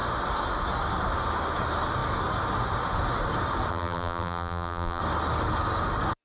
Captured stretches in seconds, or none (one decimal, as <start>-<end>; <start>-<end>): 0.0-3.7; 5.0-6.2